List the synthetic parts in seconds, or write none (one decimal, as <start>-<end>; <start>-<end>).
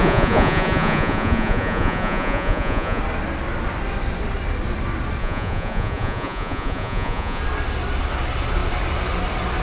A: 0.0-3.0; 5.2-7.4